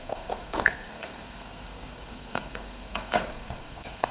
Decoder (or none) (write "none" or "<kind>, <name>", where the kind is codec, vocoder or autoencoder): codec, SNAC